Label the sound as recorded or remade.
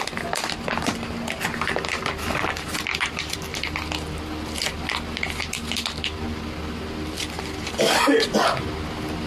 remade